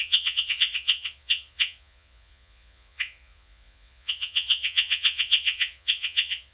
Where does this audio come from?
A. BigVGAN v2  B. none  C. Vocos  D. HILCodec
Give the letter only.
C